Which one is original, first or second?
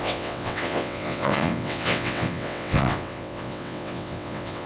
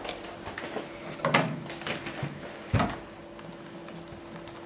second